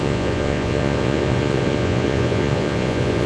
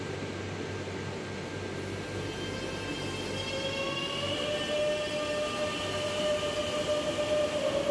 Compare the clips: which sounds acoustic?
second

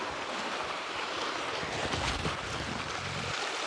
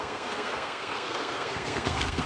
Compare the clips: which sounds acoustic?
first